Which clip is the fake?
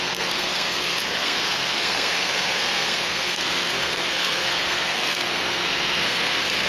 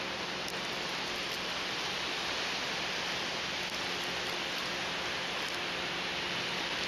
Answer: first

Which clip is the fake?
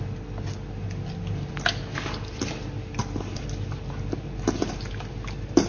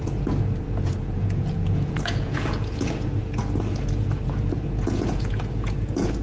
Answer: second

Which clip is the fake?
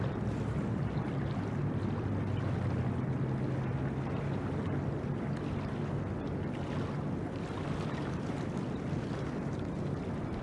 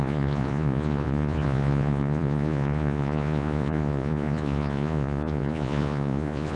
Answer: second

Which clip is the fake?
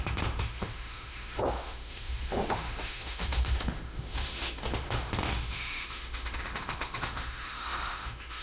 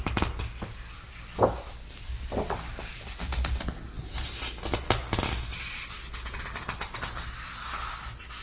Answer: first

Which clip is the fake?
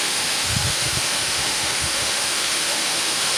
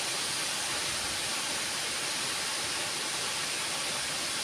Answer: first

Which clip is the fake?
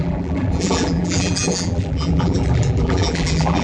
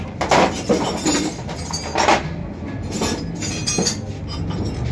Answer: first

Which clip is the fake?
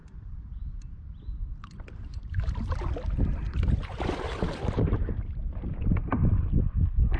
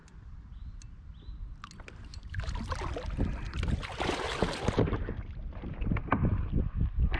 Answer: first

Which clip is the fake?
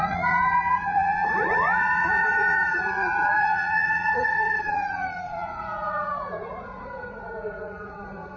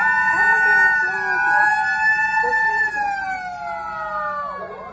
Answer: first